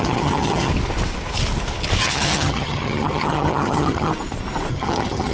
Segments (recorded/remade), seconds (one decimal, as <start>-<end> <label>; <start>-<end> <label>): 0.0-0.7 remade; 0.7-2.0 recorded; 2.0-4.1 remade; 4.1-4.7 recorded; 4.7-5.3 remade